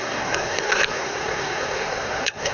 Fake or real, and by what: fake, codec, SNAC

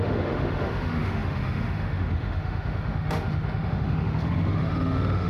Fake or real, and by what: fake, autoencoder, DAC-VAE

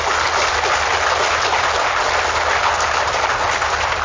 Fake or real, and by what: real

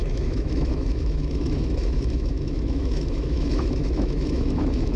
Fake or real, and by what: fake, autoencoder, DAC-VAE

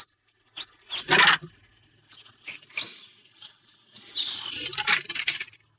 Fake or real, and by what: real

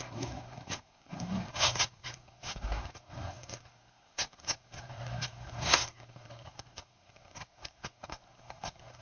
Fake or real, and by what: fake, codec, SNAC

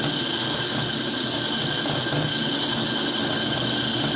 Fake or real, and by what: real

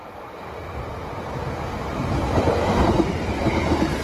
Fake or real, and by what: real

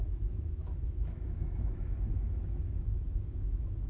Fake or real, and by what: fake, autoencoder, DAC-VAE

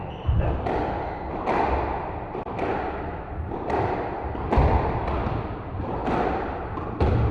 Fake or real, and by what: real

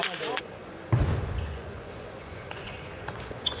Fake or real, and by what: fake, vocoder, Vocos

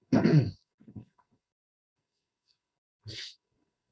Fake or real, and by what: fake, codec, SNAC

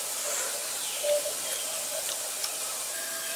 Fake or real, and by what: real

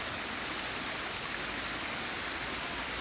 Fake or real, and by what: real